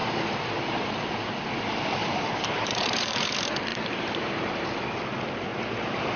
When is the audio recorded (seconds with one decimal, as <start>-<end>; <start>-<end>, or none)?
1.3-2.0; 3.3-3.7; 4.8-5.5